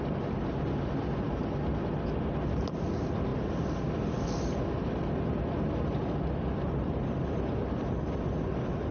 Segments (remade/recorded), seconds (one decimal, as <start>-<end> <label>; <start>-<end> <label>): 0.0-8.9 recorded